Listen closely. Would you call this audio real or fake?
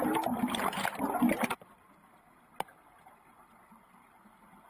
real